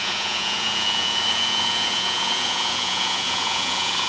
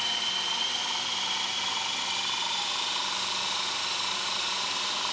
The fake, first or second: first